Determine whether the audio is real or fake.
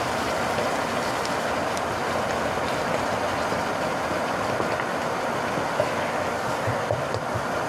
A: real